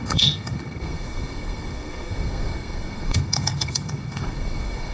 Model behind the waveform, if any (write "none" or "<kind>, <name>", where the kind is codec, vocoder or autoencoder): codec, SNAC